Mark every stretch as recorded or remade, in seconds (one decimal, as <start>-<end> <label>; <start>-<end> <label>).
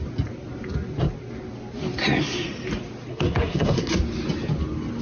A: 0.0-3.1 recorded; 3.1-3.9 remade; 3.9-5.0 recorded